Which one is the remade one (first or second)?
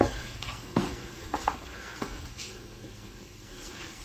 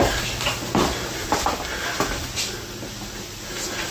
first